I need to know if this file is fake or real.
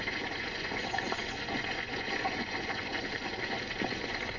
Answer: fake